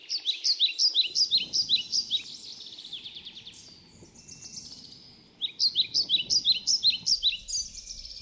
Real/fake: real